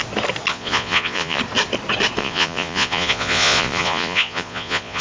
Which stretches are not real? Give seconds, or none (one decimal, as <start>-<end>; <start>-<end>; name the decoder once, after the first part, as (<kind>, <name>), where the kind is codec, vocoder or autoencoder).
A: 0.5-1.4 (vocoder, Vocos); 2.2-5.0